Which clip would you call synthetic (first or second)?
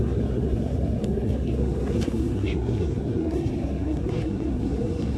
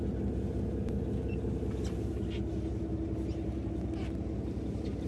first